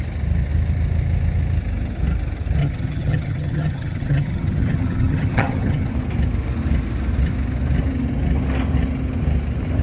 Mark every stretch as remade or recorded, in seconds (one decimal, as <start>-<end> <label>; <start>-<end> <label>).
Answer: 0.0-2.6 recorded; 2.6-5.9 remade; 5.9-9.8 recorded